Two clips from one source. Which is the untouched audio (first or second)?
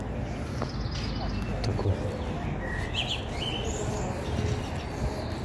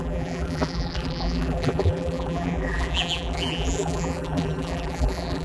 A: first